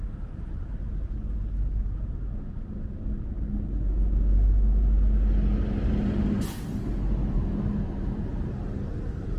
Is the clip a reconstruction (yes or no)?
no